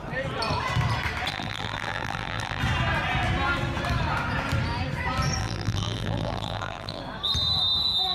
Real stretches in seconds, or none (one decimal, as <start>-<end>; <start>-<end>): 0.0-1.3; 2.6-5.4; 7.0-8.1